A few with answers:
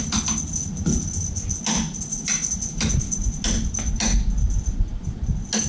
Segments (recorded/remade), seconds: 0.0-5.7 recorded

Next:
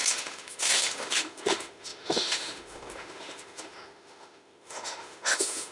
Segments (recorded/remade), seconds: 0.0-5.7 remade

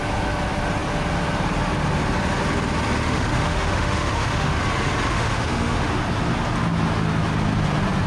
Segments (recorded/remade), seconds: 0.0-3.0 recorded; 3.0-4.6 remade; 4.6-5.1 recorded; 5.1-5.9 remade; 5.9-8.1 recorded

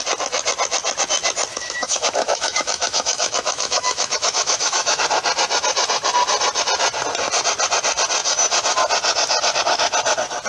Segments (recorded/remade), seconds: 0.0-1.5 recorded; 1.5-5.0 remade; 5.0-10.5 recorded